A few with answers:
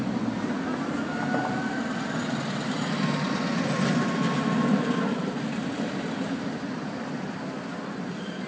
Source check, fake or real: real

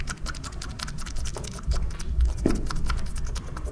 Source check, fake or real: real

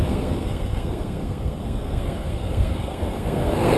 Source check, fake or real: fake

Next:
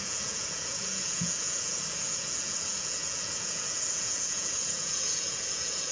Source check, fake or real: fake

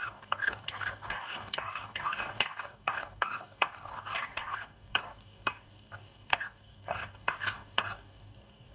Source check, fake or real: fake